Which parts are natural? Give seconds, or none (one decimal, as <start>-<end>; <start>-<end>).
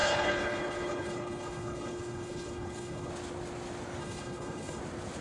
3.1-4.0; 4.8-5.2